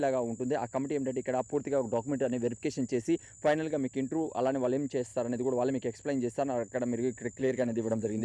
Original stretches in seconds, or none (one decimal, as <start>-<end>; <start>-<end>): 0.0-7.4